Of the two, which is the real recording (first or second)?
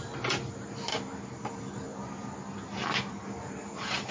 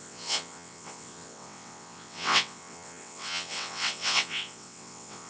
first